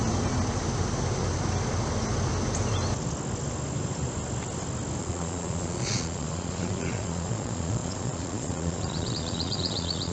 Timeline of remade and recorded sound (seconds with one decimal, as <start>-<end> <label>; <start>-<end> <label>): 0.0-5.0 recorded; 5.0-10.1 remade